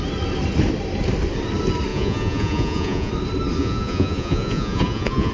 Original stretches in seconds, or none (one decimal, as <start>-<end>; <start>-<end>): 0.0-1.9; 3.1-3.6